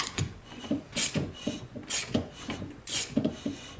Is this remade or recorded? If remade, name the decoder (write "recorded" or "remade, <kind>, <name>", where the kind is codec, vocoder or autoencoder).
remade, vocoder, Vocos